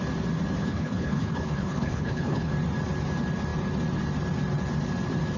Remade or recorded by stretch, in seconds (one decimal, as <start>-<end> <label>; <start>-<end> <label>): 0.0-0.6 recorded; 0.6-2.5 remade; 2.5-5.4 recorded